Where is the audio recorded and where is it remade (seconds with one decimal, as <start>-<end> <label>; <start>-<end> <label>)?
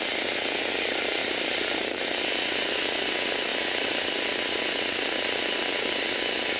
0.0-1.2 recorded; 1.2-2.3 remade; 2.3-3.5 recorded; 3.5-4.1 remade; 4.1-6.6 recorded